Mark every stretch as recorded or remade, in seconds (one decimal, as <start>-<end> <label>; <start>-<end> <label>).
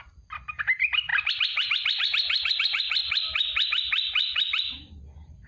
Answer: 0.0-5.5 recorded